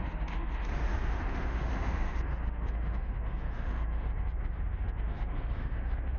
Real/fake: fake